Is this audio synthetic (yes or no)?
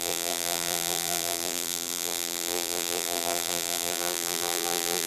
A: yes